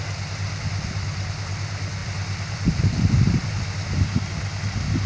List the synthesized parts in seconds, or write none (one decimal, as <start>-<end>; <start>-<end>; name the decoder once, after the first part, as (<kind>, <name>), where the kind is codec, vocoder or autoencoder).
2.0-3.3 (vocoder, BigVGAN v2)